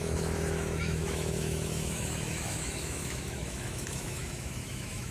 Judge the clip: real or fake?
fake